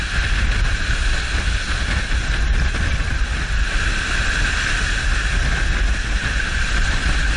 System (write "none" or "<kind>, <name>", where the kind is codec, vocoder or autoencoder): none